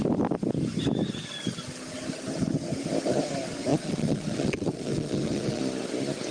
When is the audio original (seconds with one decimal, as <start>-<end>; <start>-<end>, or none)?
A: 0.0-3.7; 5.6-6.3

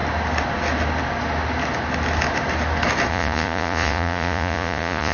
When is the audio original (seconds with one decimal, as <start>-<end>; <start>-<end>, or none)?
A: 0.0-3.1

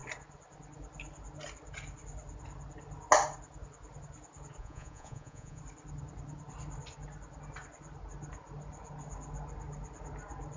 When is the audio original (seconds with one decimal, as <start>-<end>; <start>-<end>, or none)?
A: 0.0-4.6; 5.6-10.6

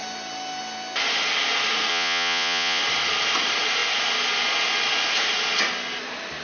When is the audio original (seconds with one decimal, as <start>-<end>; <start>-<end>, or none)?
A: 0.0-1.9; 2.8-6.4